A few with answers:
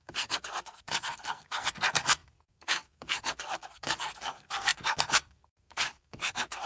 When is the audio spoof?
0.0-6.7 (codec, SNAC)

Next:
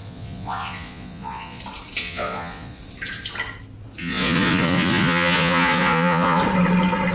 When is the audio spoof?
0.0-1.6 (vocoder, Vocos); 2.0-2.8; 4.0-6.4

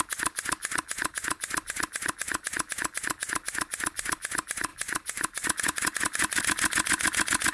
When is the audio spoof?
4.7-6.4 (vocoder, BigVGAN v2)

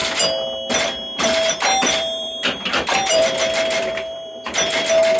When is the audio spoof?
1.8-5.2 (vocoder, BigVGAN v2)

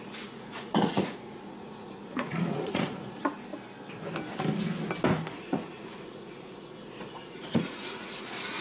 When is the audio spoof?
0.0-3.5 (vocoder, Vocos); 5.3-8.6

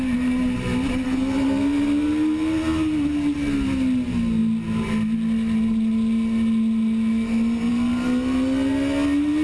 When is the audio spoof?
none

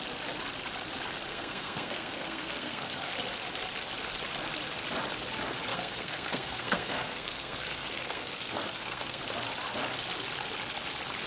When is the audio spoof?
1.3-3.1 (codec, SNAC); 5.7-9.2